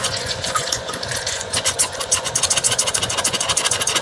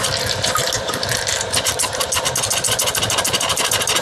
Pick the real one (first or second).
second